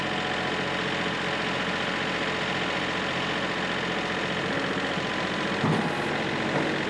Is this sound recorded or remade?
recorded